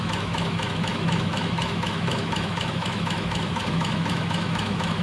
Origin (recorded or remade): remade